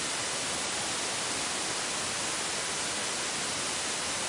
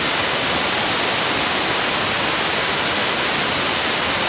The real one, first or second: first